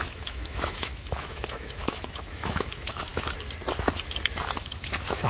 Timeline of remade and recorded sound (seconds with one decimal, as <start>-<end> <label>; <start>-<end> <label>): 0.0-3.1 remade; 3.1-4.6 recorded; 4.6-5.3 remade